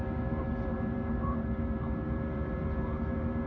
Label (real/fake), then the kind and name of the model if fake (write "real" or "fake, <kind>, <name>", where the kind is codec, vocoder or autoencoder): fake, vocoder, BigVGAN v2